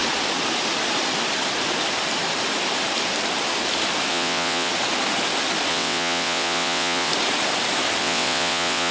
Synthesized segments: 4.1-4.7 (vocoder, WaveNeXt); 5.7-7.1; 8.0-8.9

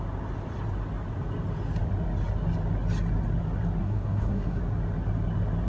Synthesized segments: 3.8-4.6 (codec, SNAC)